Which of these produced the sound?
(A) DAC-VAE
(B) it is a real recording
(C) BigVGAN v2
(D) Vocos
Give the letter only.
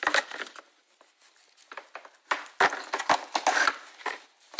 B